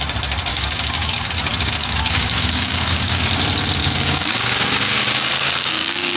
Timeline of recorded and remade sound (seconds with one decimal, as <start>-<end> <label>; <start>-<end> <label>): 0.0-0.5 recorded; 0.5-1.3 remade; 1.3-1.8 recorded; 1.8-3.3 remade; 3.3-3.8 recorded; 3.8-6.2 remade